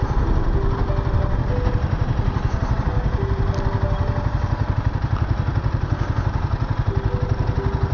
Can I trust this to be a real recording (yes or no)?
yes